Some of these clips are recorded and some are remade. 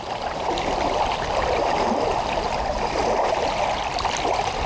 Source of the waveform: recorded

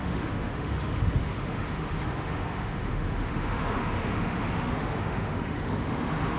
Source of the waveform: remade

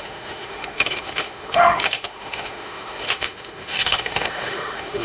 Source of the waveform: remade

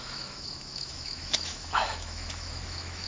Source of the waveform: remade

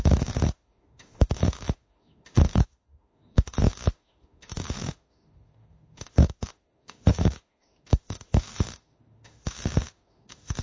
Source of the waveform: remade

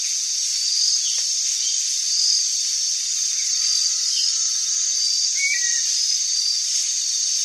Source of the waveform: recorded